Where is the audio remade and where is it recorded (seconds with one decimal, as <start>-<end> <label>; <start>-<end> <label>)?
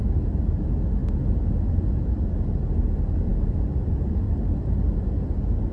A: 0.0-5.7 recorded